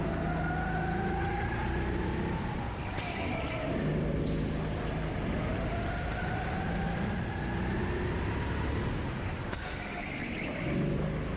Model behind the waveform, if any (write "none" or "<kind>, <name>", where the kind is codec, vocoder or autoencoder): none